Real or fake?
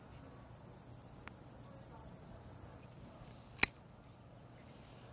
real